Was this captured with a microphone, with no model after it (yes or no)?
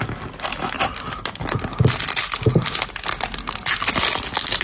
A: yes